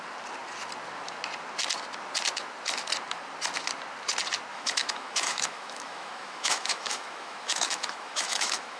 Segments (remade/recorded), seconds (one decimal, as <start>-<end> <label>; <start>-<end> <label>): 0.0-4.5 recorded; 4.5-8.8 remade